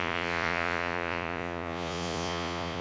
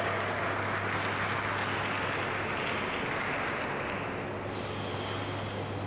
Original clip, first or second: second